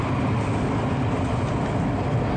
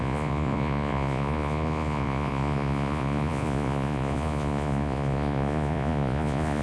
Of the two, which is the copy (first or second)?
second